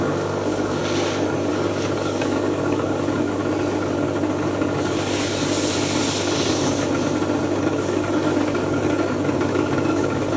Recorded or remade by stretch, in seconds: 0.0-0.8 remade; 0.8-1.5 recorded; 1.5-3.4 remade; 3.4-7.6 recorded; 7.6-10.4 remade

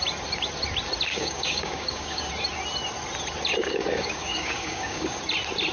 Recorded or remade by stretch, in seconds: 0.0-1.1 recorded; 1.1-2.3 remade; 2.3-3.6 recorded; 3.6-5.2 remade; 5.2-5.7 recorded

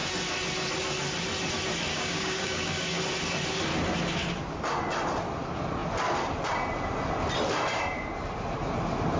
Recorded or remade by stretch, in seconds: 0.0-1.9 recorded; 1.9-3.0 remade; 3.0-9.2 recorded

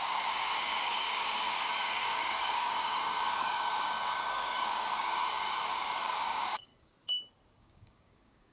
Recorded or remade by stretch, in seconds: 0.0-6.7 remade; 6.7-7.6 recorded; 7.6-8.5 remade

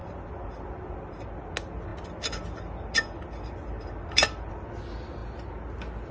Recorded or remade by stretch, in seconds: 0.0-6.1 recorded